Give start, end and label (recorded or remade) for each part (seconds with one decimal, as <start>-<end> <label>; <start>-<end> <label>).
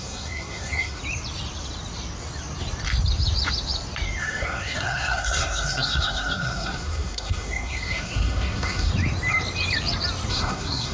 0.0-1.0 remade; 1.0-4.2 recorded; 4.2-8.9 remade; 8.9-10.3 recorded; 10.3-10.9 remade